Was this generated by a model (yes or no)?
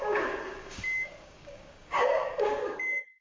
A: yes